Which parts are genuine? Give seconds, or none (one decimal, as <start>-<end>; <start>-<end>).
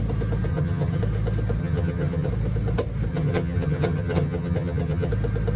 0.0-0.5; 1.0-1.6; 2.3-3.1; 5.1-5.6